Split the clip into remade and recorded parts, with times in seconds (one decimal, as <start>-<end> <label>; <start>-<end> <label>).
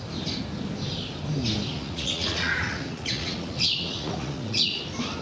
0.0-1.7 recorded; 1.7-4.8 remade; 4.8-5.2 recorded